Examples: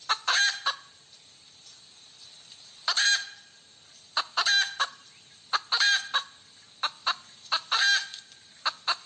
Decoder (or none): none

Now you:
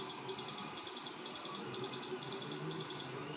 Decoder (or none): vocoder, BigVGAN v2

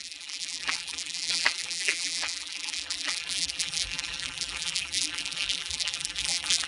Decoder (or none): vocoder, BigVGAN v2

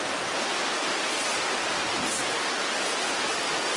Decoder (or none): none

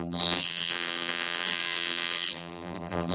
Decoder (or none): vocoder, BigVGAN v2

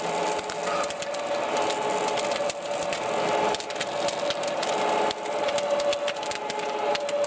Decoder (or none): none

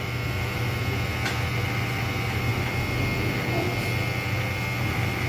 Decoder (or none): none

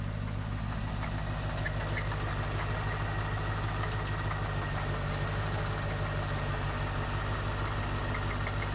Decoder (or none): none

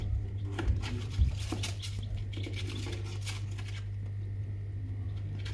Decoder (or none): vocoder, BigVGAN v2